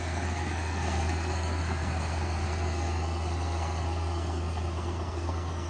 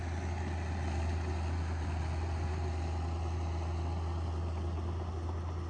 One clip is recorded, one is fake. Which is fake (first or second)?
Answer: first